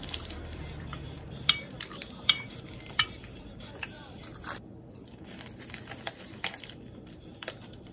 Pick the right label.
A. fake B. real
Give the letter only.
A